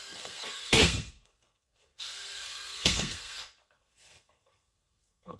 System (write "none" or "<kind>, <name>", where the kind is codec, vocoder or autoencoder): codec, SNAC